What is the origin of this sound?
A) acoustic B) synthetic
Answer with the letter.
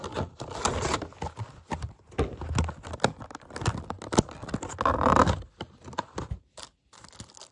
A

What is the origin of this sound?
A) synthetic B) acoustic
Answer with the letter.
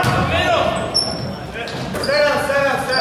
B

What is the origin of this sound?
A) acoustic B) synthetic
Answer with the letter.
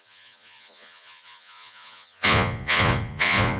B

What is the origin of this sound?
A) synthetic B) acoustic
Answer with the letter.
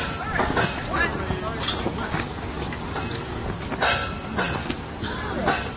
B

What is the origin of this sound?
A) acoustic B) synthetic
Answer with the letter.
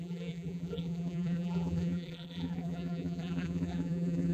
B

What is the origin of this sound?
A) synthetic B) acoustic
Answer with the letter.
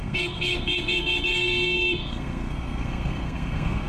A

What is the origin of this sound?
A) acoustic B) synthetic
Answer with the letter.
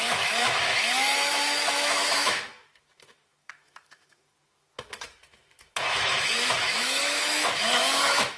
B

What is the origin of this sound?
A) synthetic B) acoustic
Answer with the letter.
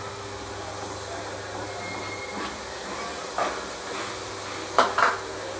B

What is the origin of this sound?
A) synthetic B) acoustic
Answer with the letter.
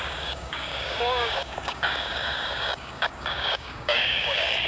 A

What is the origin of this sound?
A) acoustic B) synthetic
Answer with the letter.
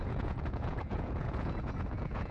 B